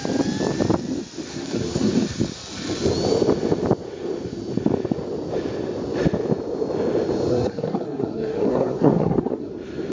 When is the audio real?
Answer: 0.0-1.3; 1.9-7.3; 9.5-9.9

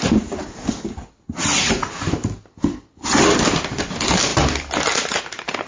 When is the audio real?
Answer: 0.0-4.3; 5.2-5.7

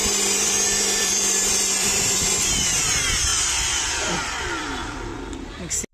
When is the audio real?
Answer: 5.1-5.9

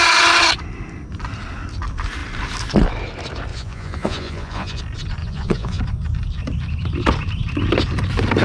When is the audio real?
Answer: 0.0-3.5; 4.8-5.2; 5.8-8.4

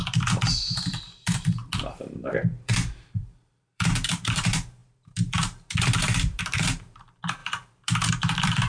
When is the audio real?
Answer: none

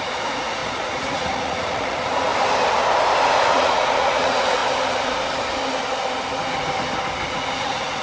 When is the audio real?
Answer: 2.3-3.5; 4.6-7.6